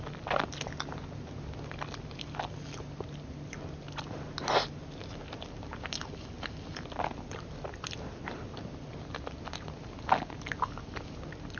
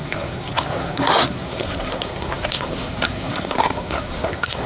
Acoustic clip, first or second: first